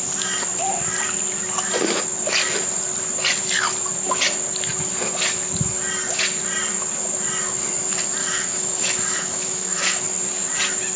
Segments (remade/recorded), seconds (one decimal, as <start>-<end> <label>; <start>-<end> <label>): 0.0-8.2 recorded; 8.2-10.0 remade; 10.0-11.0 recorded